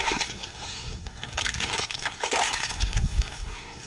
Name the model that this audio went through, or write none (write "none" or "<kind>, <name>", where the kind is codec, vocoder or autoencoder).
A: codec, SNAC